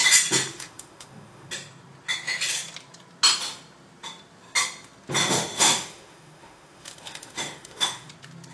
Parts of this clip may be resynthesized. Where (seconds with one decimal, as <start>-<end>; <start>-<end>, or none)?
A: 0.5-1.5; 5.2-8.1